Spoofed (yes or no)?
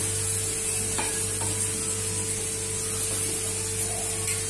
no